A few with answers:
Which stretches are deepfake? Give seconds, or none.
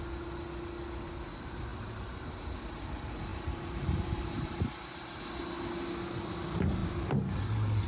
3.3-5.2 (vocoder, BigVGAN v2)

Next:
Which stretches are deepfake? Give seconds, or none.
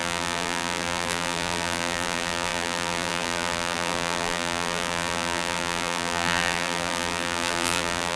0.0-8.2 (vocoder, BigVGAN v2)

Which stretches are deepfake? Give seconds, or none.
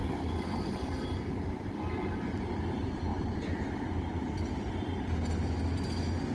none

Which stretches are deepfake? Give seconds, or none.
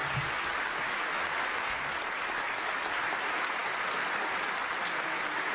3.6-4.6 (vocoder, BigVGAN v2)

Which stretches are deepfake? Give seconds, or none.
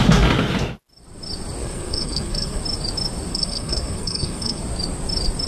1.6-2.6 (codec, SNAC); 3.3-4.6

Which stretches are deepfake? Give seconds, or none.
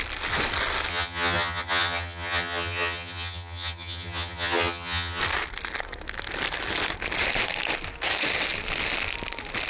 0.9-5.2 (vocoder, HiFi-GAN)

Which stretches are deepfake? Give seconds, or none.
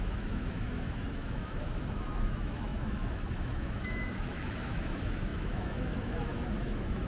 0.0-7.1 (autoencoder, DAC-VAE)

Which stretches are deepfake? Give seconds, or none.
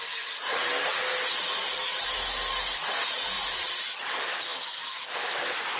none